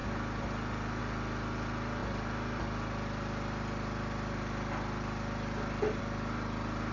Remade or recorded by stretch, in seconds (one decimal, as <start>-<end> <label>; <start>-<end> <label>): 0.0-6.9 recorded